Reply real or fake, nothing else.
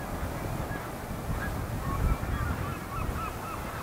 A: real